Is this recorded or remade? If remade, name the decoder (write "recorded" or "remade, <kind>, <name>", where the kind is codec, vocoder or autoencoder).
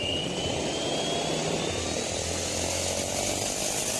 recorded